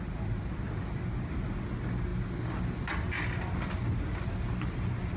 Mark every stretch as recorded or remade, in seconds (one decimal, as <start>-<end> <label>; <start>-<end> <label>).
0.0-5.2 recorded